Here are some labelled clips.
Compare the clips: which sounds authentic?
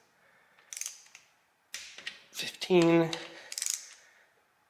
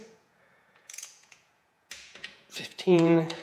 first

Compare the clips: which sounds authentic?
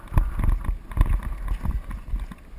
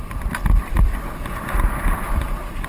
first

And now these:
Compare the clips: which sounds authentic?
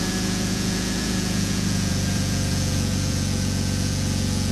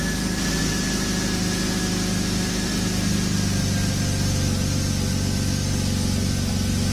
second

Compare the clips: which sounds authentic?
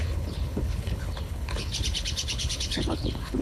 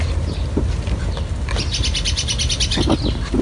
second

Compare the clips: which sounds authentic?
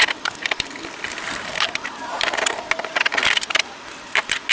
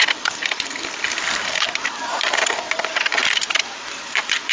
first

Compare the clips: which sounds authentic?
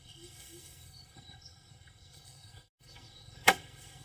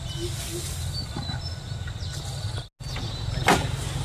second